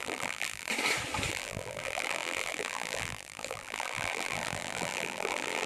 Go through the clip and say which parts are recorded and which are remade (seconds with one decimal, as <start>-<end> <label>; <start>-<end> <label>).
0.0-0.7 remade; 0.7-1.3 recorded; 1.3-5.7 remade